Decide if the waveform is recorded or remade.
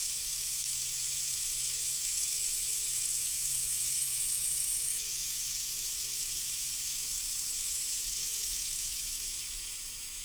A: remade